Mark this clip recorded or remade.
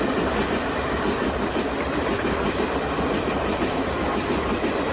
recorded